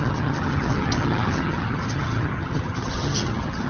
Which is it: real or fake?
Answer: fake